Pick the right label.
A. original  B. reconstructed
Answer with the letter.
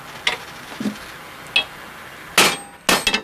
A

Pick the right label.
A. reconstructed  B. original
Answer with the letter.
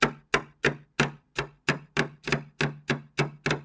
B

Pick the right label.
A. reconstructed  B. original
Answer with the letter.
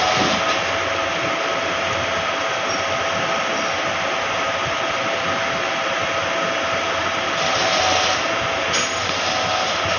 B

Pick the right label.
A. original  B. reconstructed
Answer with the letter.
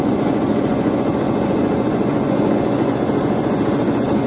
B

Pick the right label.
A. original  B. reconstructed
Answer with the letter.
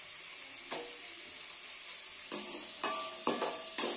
A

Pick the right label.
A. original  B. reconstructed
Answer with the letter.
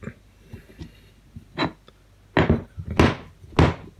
A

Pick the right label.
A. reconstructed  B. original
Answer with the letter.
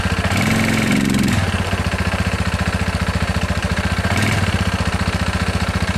A